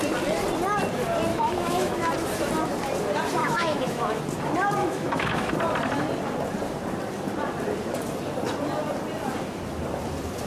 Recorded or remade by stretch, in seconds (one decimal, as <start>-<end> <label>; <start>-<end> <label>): 0.0-1.3 recorded; 1.3-2.1 remade; 2.1-3.4 recorded; 3.4-4.2 remade; 4.2-4.8 recorded; 4.8-5.5 remade; 5.5-10.5 recorded

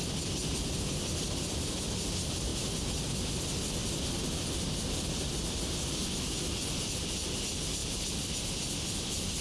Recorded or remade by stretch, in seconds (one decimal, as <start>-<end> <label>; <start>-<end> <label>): 0.0-9.4 recorded